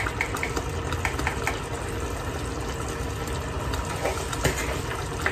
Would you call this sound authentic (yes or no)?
yes